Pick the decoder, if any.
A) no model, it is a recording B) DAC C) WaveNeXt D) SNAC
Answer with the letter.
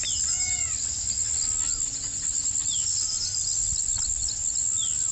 A